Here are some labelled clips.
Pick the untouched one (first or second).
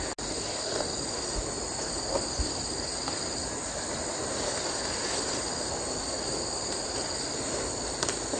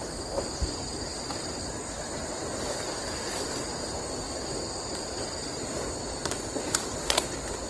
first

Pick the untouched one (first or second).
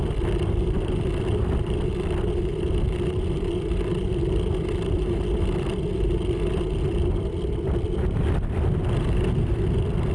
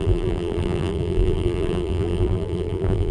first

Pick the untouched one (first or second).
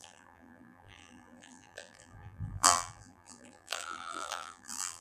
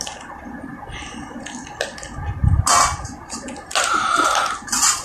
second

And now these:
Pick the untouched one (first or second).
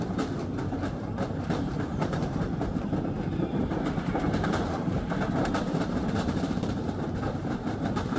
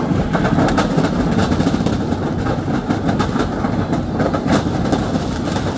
second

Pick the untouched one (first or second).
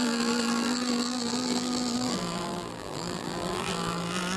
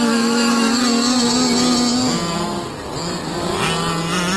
second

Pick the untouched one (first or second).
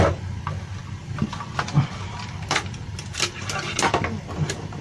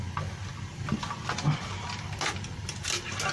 second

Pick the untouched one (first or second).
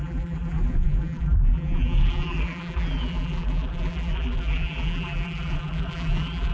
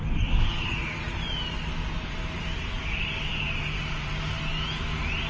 second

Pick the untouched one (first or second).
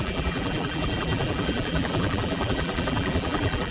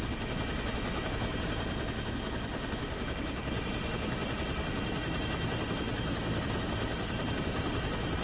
second